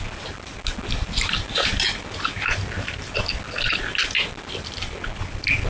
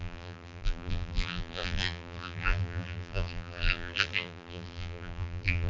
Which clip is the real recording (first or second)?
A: first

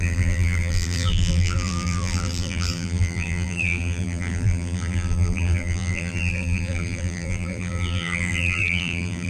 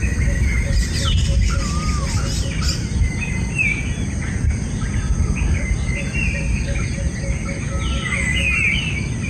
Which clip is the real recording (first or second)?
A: second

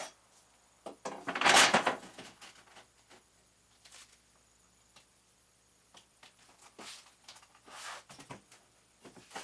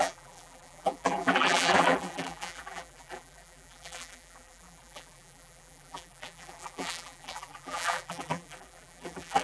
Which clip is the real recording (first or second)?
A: first